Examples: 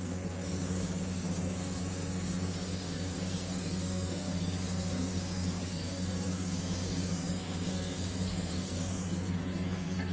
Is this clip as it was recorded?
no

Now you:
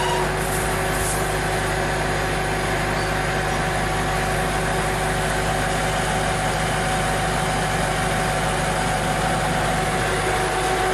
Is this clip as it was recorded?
yes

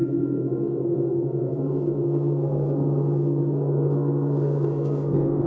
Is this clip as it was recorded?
no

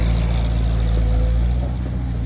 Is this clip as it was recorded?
yes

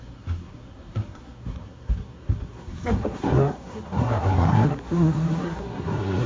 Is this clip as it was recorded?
no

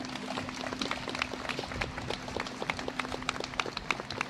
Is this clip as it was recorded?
yes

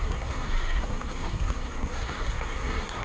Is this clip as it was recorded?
no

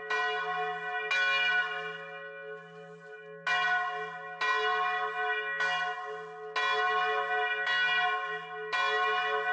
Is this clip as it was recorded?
yes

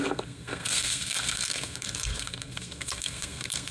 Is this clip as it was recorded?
no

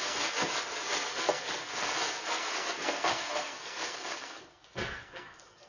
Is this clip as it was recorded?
no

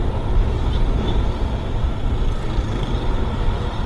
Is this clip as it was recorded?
yes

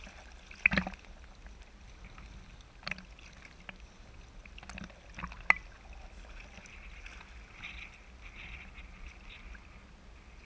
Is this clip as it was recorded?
yes